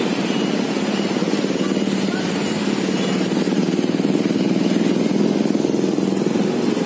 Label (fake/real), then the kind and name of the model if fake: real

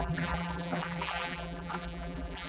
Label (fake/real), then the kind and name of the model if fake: fake, vocoder, BigVGAN v2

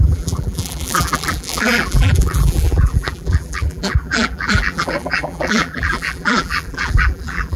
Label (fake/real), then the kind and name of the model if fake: fake, vocoder, BigVGAN v2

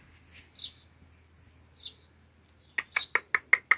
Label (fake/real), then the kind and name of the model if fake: real